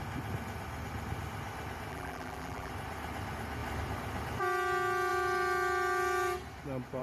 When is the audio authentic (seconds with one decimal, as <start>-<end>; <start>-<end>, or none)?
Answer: 0.0-1.9; 2.7-7.0